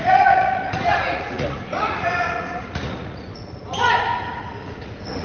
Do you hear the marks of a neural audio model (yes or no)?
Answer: yes